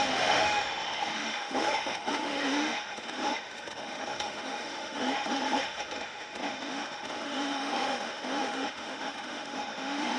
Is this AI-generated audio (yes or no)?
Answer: yes